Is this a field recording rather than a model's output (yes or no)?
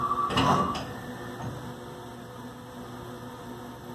yes